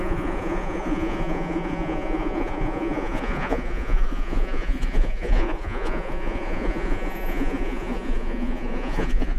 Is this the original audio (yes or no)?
no